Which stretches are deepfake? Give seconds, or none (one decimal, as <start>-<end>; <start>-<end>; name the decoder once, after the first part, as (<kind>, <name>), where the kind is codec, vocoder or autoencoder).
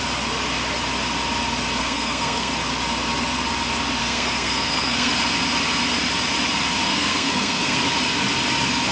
1.8-2.5 (codec, SNAC); 4.0-5.1; 6.9-7.8